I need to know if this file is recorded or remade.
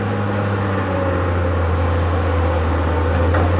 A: recorded